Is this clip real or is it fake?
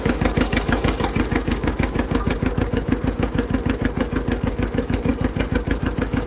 fake